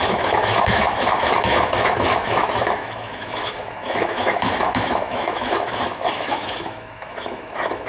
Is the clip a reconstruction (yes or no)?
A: yes